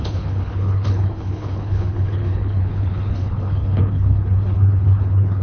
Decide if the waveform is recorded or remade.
remade